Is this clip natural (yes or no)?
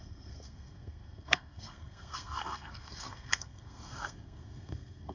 no